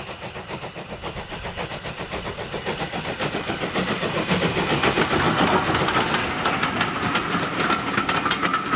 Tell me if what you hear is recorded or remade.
recorded